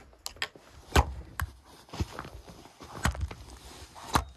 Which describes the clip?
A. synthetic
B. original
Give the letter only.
B